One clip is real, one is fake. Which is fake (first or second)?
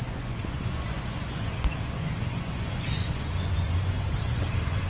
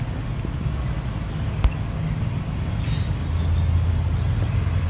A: first